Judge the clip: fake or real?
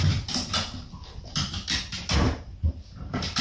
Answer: real